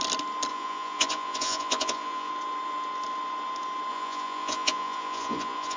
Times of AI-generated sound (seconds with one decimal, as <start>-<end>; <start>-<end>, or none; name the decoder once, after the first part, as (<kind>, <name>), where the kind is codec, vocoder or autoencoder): 0.5-2.3 (vocoder, Vocos); 3.9-5.8